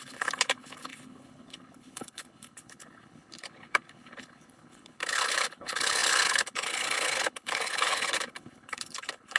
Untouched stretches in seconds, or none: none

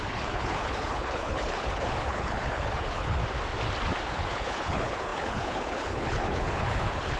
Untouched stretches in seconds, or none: 3.2-4.1

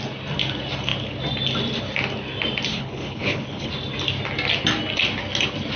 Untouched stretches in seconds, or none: 0.0-2.7; 3.7-5.8

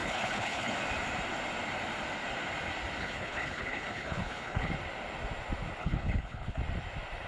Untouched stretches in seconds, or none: 0.7-3.0; 4.7-5.8; 6.6-7.3

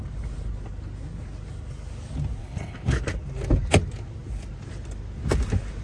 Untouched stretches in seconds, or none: 0.0-2.4; 3.0-5.8

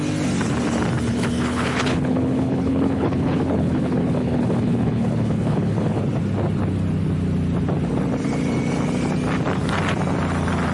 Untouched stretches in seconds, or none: 0.0-1.1; 6.0-10.7

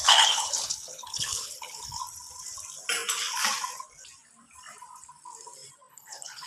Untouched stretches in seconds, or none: 2.0-5.9

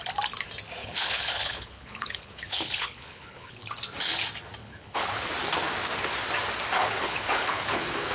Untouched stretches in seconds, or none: 0.0-0.8; 3.7-4.6; 5.3-6.8